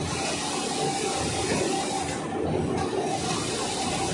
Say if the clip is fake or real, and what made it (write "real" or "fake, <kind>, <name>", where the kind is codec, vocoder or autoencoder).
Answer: real